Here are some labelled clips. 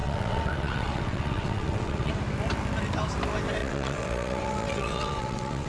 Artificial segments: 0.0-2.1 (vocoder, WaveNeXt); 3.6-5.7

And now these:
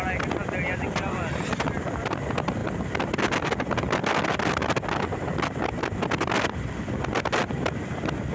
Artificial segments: none

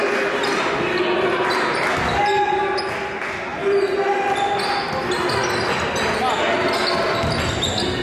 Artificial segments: none

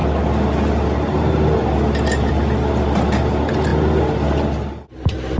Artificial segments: none

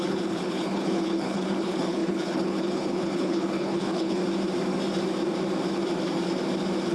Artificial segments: 0.0-4.2 (codec, HILCodec)

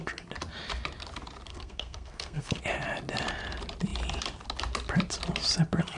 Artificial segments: 1.5-2.6 (codec, SNAC)

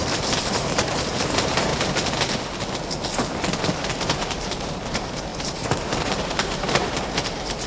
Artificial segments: 0.0-1.7 (vocoder, BigVGAN v2); 3.9-7.7

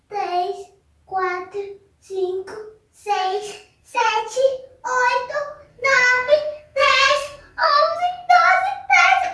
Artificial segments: 3.2-4.2 (codec, SNAC); 5.7-8.3